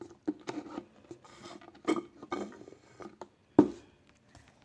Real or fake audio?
real